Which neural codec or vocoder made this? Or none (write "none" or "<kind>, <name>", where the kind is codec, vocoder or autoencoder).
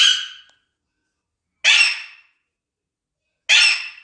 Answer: none